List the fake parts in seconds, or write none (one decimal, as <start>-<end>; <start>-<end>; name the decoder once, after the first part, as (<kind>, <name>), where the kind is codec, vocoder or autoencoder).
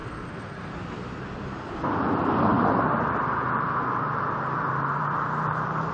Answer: 0.0-0.7 (codec, SNAC)